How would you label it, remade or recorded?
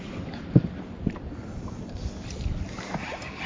recorded